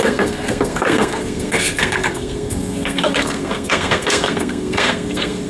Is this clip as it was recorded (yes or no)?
no